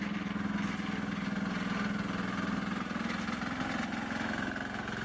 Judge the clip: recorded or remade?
recorded